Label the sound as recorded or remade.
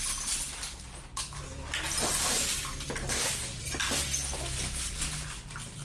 recorded